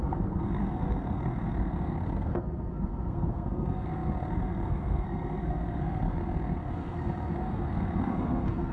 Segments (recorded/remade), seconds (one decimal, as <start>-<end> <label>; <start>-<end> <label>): 0.0-8.7 remade